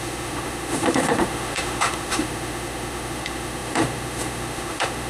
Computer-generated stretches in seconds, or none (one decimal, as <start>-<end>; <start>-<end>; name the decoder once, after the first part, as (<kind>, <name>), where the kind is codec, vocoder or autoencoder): 0.0-5.1 (autoencoder, DAC-VAE)